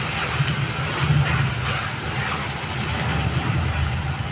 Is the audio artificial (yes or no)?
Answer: no